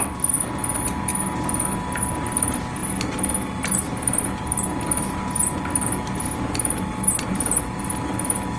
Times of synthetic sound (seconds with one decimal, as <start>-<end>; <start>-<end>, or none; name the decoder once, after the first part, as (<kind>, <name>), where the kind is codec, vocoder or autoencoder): none